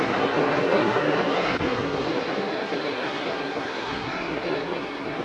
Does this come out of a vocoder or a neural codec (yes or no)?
yes